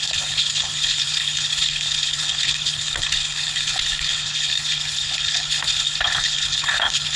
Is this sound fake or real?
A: fake